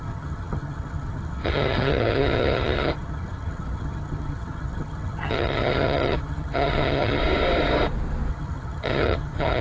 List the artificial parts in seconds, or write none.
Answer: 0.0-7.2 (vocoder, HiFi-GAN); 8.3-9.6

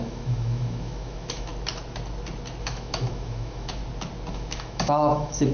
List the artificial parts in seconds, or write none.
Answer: 0.0-1.5 (autoencoder, DAC-VAE); 2.6-3.8; 4.3-5.5